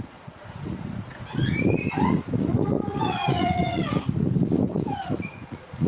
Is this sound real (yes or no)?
no